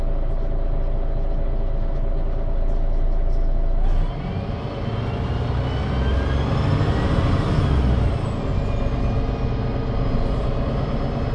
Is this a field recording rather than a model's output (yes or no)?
yes